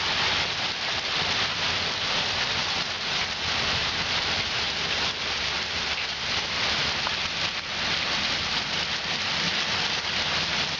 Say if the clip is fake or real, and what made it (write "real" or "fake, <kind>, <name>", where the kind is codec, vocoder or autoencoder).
real